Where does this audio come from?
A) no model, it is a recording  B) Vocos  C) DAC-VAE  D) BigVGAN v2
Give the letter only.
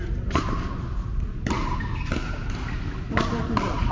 A